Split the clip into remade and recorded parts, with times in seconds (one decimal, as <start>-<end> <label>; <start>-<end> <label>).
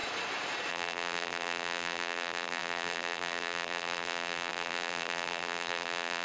0.0-0.7 recorded; 0.7-6.2 remade